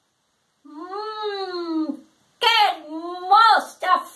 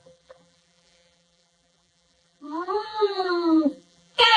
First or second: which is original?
first